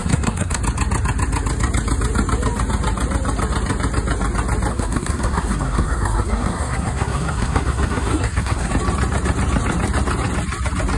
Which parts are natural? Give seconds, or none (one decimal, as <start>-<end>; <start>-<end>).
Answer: 0.6-4.7; 8.7-11.0